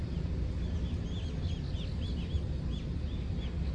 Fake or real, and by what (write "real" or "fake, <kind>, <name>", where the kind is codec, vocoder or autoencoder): real